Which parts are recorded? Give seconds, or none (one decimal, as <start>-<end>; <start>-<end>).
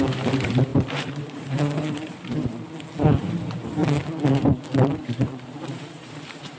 2.5-3.2; 3.8-5.0